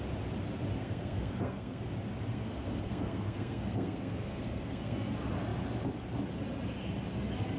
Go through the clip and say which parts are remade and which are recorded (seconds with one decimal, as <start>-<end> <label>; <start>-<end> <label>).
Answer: 0.0-0.8 recorded; 0.8-1.8 remade; 1.8-2.3 recorded; 2.3-5.1 remade; 5.1-7.6 recorded